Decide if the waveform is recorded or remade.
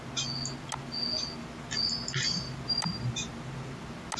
recorded